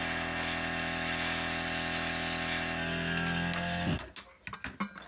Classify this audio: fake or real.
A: real